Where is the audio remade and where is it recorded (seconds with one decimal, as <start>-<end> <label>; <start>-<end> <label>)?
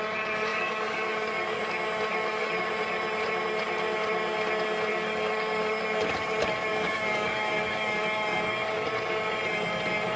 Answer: 0.0-0.5 recorded; 0.5-1.6 remade; 1.6-2.1 recorded; 2.1-2.7 remade; 2.7-4.9 recorded; 4.9-5.8 remade; 5.8-6.7 recorded; 6.7-8.9 remade; 8.9-10.2 recorded